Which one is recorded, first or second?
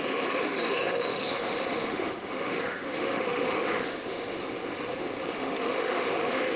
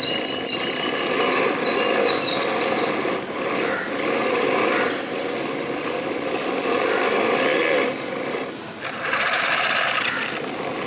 second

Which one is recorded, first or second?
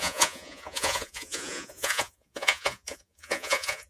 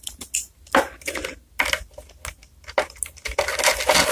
second